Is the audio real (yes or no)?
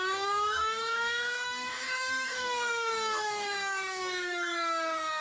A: no